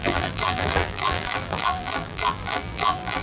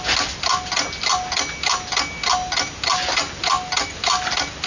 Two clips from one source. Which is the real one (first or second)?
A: second